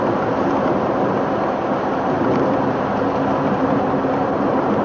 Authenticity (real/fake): real